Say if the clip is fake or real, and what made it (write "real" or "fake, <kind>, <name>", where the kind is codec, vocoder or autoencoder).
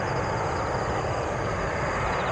real